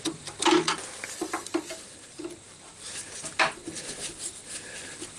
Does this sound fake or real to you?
real